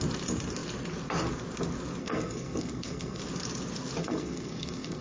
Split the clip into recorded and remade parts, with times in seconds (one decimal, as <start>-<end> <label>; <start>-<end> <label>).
0.0-2.0 recorded; 2.0-3.2 remade; 3.2-4.0 recorded; 4.0-5.0 remade